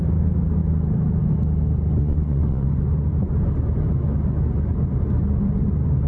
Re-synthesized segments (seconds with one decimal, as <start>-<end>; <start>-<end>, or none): 2.0-2.7